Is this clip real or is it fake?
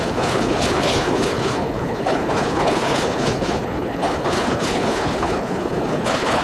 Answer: fake